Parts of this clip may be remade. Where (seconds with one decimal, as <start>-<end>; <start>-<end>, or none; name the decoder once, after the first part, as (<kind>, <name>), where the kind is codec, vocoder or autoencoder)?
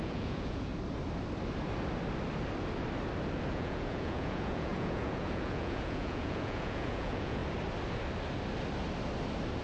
0.0-0.7 (vocoder, Vocos); 3.5-7.4